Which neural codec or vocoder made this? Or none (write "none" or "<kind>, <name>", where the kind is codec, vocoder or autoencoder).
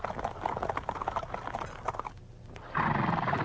none